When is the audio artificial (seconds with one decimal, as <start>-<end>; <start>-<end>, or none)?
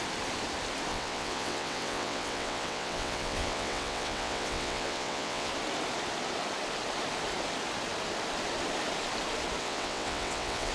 0.9-5.5; 9.6-10.7